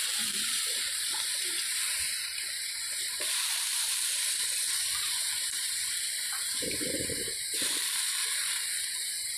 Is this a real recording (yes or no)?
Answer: no